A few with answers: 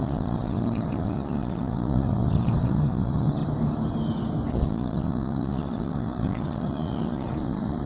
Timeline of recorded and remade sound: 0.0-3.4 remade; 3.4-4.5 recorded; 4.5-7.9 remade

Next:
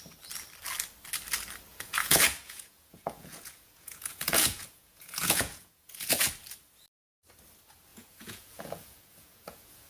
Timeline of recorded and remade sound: 0.0-1.7 recorded; 1.7-6.3 remade; 6.3-7.9 recorded; 7.9-9.9 remade